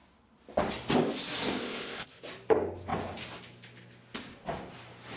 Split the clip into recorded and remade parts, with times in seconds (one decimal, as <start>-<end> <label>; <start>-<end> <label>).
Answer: 0.0-1.6 recorded; 1.6-2.2 remade; 2.2-5.2 recorded